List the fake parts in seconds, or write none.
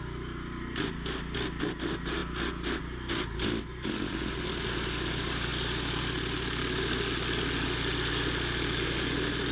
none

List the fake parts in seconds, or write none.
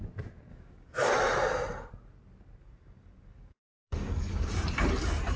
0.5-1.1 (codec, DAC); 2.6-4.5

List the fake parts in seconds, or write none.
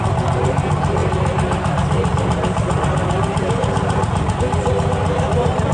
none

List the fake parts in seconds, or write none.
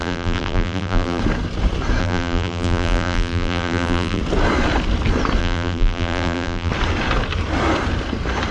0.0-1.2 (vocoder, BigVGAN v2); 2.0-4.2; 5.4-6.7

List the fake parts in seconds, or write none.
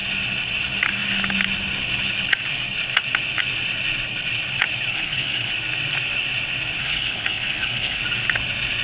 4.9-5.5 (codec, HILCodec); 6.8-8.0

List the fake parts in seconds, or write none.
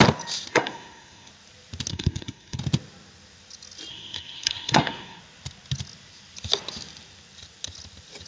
0.5-1.3 (codec, SNAC); 1.9-2.6; 3.9-5.2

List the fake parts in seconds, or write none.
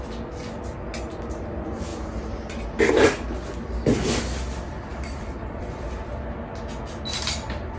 4.9-6.2 (vocoder, BigVGAN v2); 7.1-7.8